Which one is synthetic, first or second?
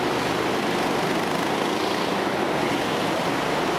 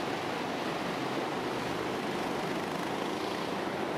second